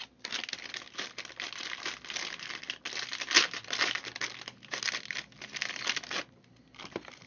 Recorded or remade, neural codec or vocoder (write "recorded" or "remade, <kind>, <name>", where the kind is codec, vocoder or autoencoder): recorded